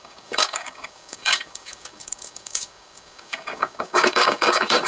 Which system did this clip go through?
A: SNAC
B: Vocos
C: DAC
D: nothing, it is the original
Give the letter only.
C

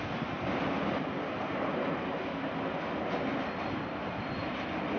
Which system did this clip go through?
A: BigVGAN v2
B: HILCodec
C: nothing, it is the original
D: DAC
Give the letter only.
C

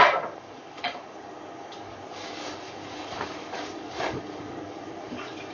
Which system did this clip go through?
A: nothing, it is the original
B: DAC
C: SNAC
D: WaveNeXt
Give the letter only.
B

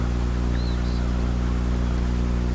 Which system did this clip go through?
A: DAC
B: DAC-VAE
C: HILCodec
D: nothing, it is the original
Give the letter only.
D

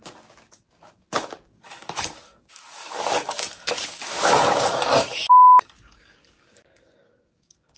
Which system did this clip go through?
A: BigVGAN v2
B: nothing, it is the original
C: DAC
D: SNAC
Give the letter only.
C